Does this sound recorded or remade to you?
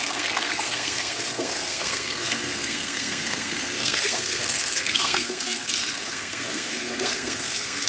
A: remade